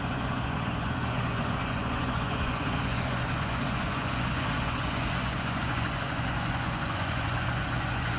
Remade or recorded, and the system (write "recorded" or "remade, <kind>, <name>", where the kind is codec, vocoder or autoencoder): remade, vocoder, Vocos